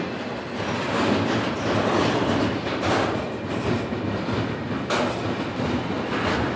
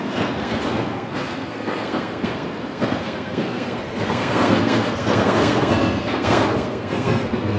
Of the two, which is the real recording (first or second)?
first